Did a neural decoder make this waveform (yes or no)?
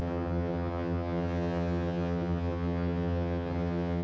yes